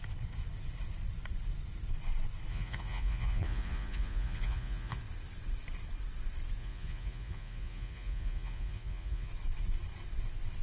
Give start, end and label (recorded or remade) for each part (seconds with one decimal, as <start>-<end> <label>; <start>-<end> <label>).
0.0-2.5 recorded; 2.5-5.0 remade; 5.0-6.6 recorded; 6.6-9.3 remade; 9.3-10.6 recorded